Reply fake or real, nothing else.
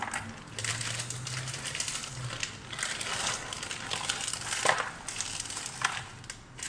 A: real